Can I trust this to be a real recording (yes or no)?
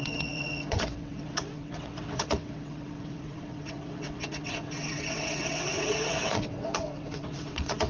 no